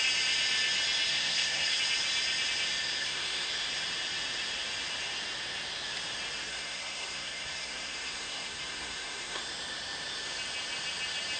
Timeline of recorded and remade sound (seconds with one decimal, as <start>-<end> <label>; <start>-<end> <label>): 0.0-1.1 recorded; 1.1-1.8 remade; 1.8-3.0 recorded; 3.0-3.5 remade; 3.5-6.5 recorded; 6.5-9.4 remade; 9.4-11.4 recorded